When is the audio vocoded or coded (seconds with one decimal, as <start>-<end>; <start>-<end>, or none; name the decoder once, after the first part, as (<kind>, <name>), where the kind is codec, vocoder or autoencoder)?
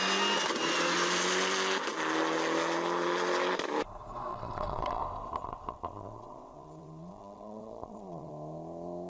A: 4.3-5.0 (vocoder, WaveNeXt); 5.4-8.3